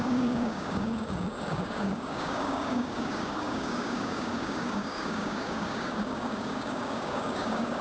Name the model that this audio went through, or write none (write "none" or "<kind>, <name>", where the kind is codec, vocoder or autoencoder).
codec, DAC